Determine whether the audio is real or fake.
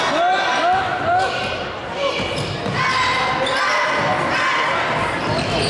real